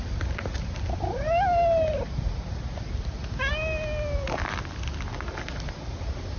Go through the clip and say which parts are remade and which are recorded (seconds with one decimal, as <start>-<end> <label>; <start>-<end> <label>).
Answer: 0.0-6.4 recorded